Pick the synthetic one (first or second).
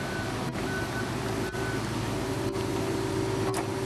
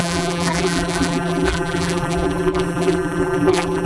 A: second